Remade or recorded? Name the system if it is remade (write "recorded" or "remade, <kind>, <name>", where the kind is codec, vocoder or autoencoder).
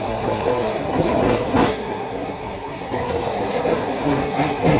remade, codec, SNAC